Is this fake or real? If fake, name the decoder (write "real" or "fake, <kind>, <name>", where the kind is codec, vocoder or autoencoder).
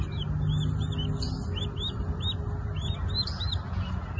real